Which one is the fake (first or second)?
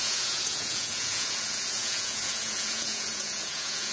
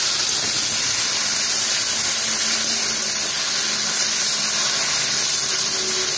first